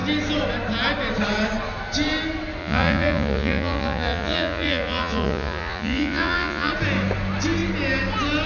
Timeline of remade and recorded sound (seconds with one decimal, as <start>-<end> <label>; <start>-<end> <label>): 0.0-2.6 recorded; 2.6-6.7 remade; 6.7-8.5 recorded